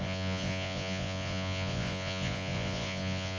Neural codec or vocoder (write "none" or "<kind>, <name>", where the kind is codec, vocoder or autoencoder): vocoder, Vocos